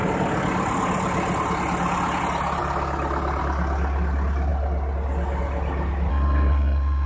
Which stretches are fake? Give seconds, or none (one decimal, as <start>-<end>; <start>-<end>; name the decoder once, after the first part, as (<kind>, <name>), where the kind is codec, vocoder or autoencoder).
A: 6.1-7.1 (codec, SNAC)